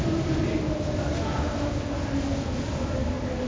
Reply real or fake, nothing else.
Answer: real